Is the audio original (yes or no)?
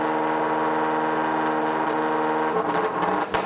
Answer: yes